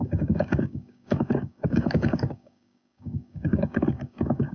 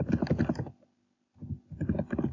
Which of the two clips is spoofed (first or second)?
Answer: first